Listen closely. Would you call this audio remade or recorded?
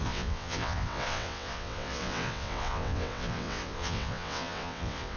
remade